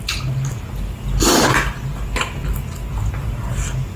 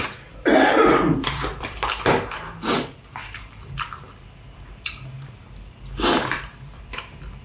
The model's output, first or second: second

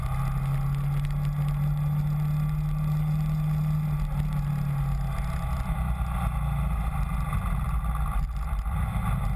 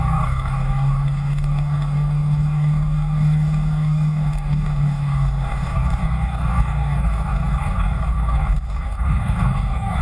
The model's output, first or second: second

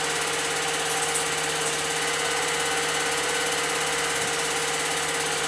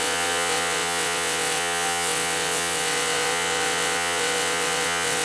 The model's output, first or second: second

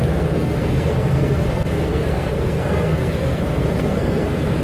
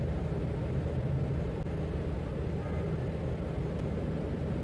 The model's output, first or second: first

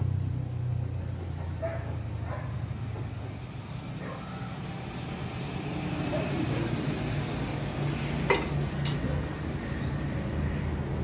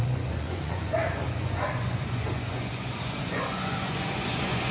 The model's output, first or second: second